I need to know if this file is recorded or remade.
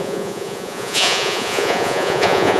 remade